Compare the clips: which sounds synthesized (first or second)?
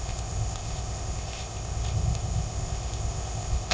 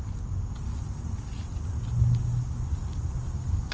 first